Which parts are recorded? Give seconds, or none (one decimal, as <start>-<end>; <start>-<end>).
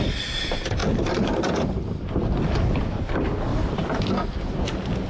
0.0-0.8; 2.1-3.5; 4.1-5.1